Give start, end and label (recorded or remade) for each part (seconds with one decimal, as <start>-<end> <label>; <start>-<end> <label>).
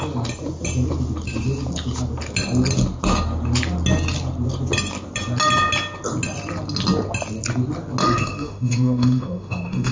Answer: 0.0-8.0 recorded; 8.0-9.9 remade